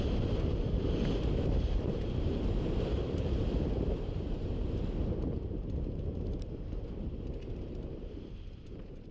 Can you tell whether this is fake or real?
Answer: fake